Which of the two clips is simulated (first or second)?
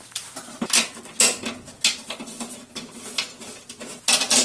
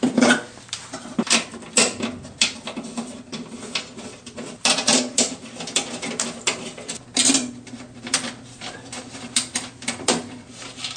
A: second